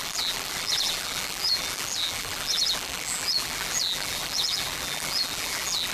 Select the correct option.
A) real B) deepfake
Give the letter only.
B